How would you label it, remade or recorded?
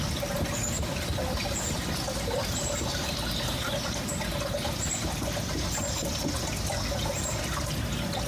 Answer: recorded